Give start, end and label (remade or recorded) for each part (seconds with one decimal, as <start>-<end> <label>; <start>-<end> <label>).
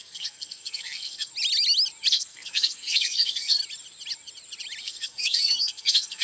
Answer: 0.0-1.3 remade; 1.3-2.1 recorded; 2.1-3.6 remade; 3.6-4.8 recorded; 4.8-6.2 remade